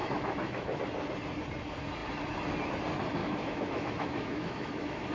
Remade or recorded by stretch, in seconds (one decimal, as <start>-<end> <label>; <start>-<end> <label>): 0.0-0.8 remade; 0.8-3.2 recorded; 3.2-5.1 remade